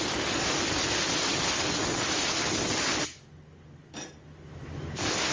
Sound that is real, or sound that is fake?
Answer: real